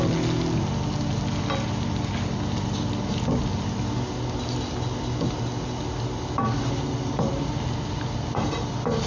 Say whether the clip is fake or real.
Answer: real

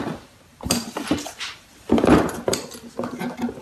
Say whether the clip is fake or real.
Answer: fake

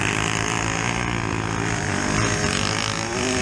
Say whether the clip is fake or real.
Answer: real